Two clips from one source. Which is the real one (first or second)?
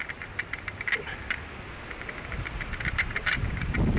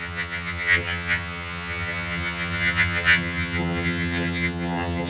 first